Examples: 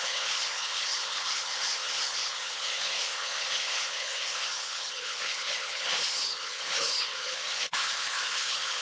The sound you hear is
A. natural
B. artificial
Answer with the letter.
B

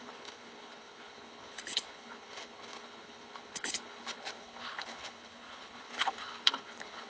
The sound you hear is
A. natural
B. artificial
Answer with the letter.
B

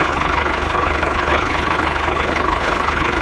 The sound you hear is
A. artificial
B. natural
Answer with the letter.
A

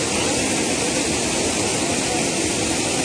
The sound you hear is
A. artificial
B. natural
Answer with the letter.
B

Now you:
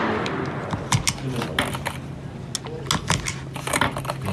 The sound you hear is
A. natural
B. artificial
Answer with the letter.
A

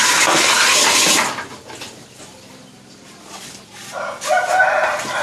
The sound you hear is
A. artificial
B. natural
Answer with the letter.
B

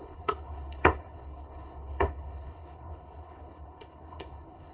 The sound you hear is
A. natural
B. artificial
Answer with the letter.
B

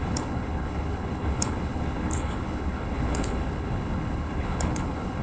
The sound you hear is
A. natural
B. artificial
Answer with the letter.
B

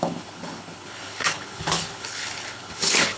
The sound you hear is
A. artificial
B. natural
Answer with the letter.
A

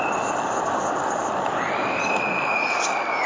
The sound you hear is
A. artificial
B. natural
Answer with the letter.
B